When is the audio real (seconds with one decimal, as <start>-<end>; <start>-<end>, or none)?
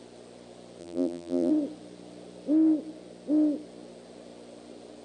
0.0-0.8; 1.5-5.0